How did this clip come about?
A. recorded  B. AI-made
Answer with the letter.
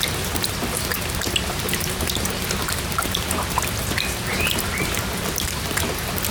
A